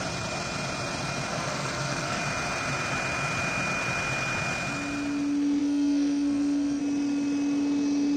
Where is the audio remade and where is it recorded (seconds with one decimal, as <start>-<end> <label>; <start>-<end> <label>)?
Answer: 0.0-1.3 recorded; 1.3-2.2 remade; 2.2-5.6 recorded; 5.6-6.8 remade; 6.8-8.2 recorded